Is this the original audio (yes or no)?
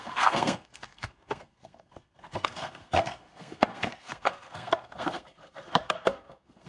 no